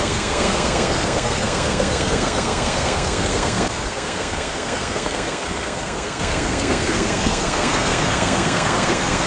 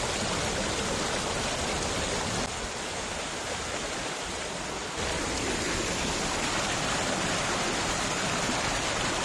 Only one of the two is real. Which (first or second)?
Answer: second